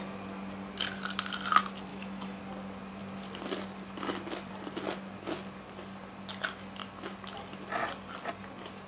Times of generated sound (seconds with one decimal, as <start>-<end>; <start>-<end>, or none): 1.9-2.4